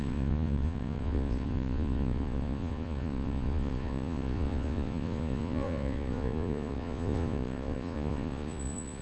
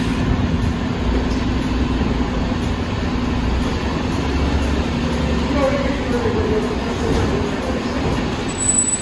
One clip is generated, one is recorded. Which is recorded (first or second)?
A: second